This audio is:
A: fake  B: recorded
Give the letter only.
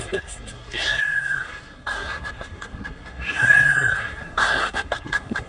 A